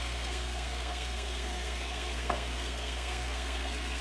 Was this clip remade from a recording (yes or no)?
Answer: yes